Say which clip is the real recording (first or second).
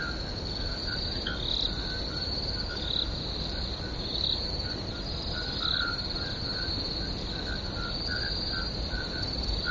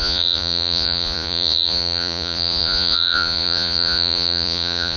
first